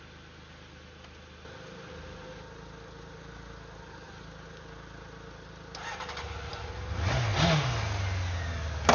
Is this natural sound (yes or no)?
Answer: yes